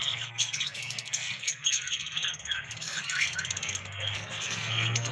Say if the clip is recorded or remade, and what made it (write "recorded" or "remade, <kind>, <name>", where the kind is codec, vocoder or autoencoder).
remade, codec, SNAC